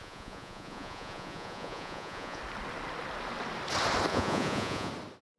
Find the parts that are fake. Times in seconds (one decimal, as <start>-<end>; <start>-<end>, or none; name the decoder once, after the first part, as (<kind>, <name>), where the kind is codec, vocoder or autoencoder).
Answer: 0.0-2.4 (vocoder, Vocos); 4.1-4.9